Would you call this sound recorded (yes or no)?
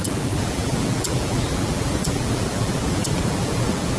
no